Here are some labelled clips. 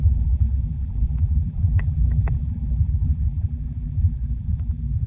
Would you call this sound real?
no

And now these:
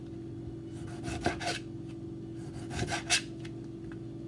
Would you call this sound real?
yes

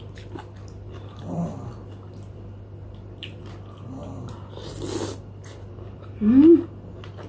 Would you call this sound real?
yes